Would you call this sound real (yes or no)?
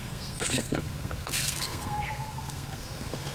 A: no